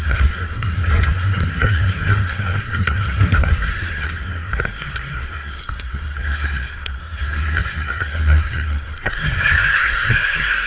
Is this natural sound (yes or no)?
no